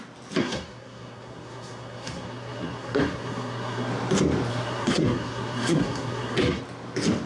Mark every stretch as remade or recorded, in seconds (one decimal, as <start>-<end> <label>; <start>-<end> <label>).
0.0-0.4 recorded; 0.4-3.9 remade; 3.9-4.5 recorded; 4.5-6.6 remade; 6.6-7.3 recorded